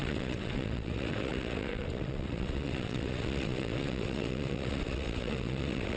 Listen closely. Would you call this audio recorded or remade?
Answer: remade